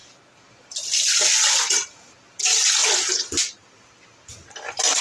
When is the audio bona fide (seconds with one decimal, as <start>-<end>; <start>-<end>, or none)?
0.0-5.0